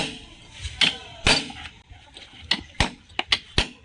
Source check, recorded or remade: recorded